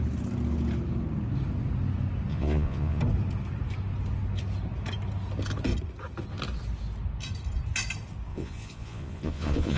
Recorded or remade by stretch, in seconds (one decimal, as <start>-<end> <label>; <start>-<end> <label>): 0.0-2.3 recorded; 2.3-3.0 remade; 3.0-8.3 recorded; 8.3-9.8 remade